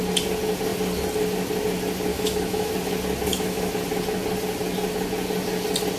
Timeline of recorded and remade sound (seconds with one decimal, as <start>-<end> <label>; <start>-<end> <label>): 0.0-2.1 recorded; 2.1-2.7 remade; 2.7-3.3 recorded; 3.3-3.8 remade; 3.8-6.0 recorded